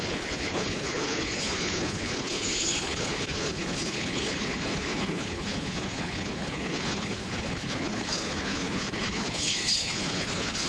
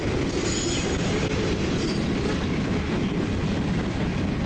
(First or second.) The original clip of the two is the second